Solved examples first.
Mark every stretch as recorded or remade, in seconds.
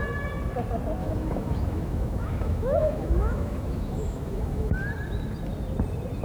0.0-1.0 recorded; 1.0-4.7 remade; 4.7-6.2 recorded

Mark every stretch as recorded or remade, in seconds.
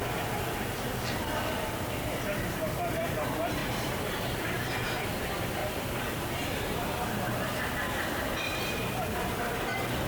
0.0-3.6 recorded; 3.6-5.1 remade; 5.1-5.6 recorded; 5.6-9.6 remade; 9.6-10.1 recorded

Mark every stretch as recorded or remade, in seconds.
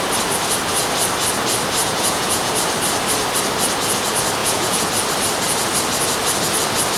0.0-1.8 recorded; 1.8-2.5 remade; 2.5-4.4 recorded; 4.4-4.9 remade; 4.9-7.0 recorded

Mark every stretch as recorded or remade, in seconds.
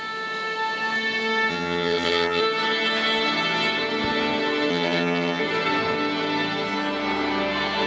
0.0-1.5 recorded; 1.5-2.4 remade; 2.4-4.7 recorded; 4.7-5.4 remade; 5.4-7.9 recorded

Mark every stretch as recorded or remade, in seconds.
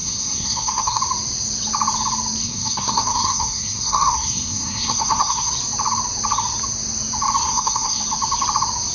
0.0-1.0 remade; 1.0-2.4 recorded; 2.4-5.5 remade; 5.5-7.4 recorded; 7.4-8.0 remade; 8.0-8.9 recorded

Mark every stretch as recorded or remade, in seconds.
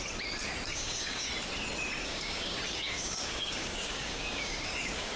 0.0-0.7 recorded; 0.7-1.3 remade; 1.3-2.0 recorded; 2.0-5.2 remade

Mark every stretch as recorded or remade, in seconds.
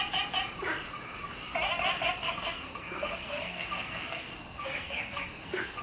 0.0-2.2 recorded; 2.2-5.8 remade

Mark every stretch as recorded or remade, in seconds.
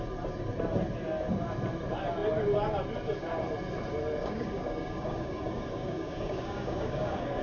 0.0-4.2 recorded; 4.2-7.4 remade